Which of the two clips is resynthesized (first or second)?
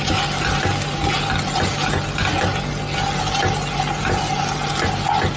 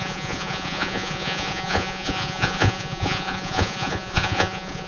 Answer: second